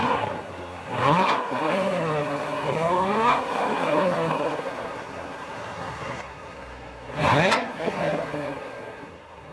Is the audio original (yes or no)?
no